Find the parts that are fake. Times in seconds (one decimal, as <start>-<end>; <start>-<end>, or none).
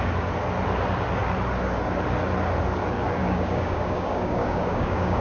3.2-5.2